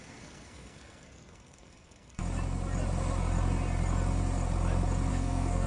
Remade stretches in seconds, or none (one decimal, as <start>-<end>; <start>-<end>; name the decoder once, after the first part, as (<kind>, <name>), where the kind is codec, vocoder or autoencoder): 0.0-2.2 (codec, SNAC); 5.1-5.7